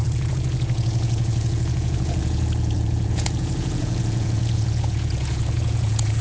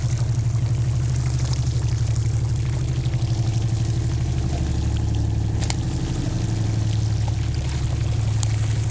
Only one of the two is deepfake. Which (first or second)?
first